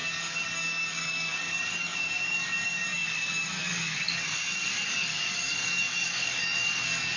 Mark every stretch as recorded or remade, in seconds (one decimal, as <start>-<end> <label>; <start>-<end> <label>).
0.0-7.2 remade